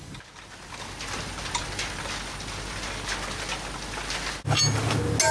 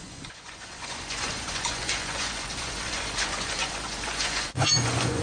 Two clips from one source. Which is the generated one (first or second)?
second